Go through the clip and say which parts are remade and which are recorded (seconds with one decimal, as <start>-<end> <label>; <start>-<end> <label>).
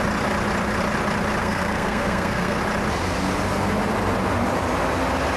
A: 0.0-1.4 recorded; 1.4-2.6 remade; 2.6-5.4 recorded